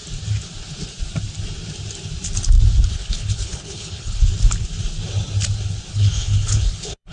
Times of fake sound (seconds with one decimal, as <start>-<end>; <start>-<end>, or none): 2.9-4.3; 5.9-7.1